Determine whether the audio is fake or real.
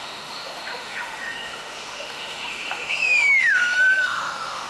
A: fake